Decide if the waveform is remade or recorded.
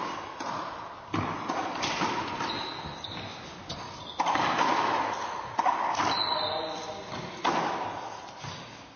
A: recorded